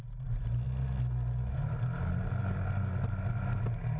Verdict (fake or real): real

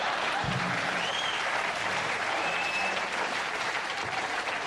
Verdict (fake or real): fake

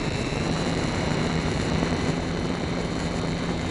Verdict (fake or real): fake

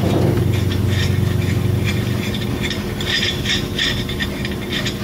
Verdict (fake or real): fake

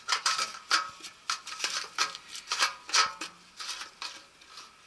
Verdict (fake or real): real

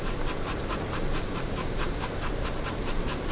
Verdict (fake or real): fake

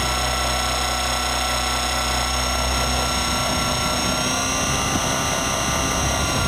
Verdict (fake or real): real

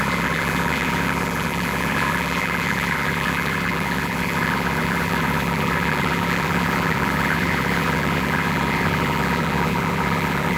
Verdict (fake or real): fake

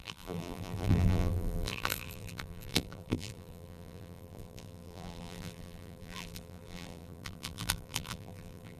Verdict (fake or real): fake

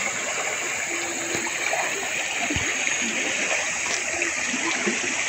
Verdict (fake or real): real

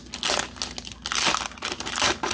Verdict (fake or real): real